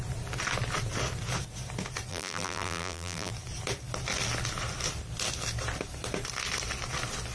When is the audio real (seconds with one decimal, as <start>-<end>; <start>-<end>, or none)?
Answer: 0.0-2.1; 3.3-7.3